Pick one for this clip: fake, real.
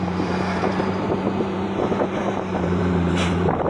fake